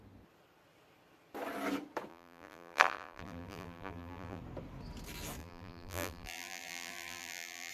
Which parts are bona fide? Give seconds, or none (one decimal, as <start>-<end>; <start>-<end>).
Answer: 0.0-2.1; 4.4-5.4